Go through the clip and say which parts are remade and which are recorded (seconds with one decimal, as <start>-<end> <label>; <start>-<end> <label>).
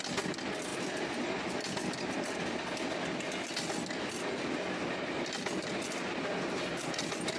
0.0-7.4 recorded